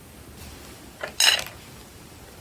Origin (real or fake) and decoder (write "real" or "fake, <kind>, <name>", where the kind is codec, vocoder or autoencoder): real